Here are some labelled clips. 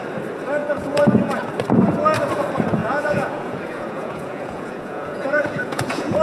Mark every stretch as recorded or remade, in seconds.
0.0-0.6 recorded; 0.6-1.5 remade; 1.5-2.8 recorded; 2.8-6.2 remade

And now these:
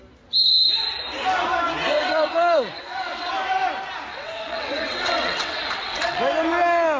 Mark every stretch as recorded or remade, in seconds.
0.0-1.9 recorded; 1.9-3.3 remade; 3.3-4.1 recorded; 4.1-6.2 remade; 6.2-7.0 recorded